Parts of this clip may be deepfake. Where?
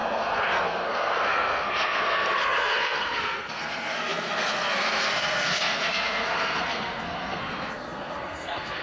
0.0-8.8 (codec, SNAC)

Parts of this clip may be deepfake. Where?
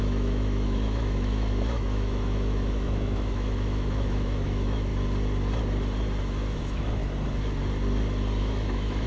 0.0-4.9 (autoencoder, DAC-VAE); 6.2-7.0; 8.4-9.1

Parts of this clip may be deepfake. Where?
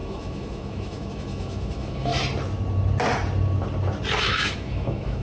0.0-2.1 (autoencoder, DAC-VAE); 4.2-5.2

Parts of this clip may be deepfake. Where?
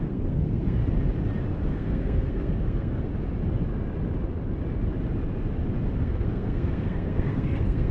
0.0-0.8 (codec, SNAC); 1.7-3.1; 6.0-7.9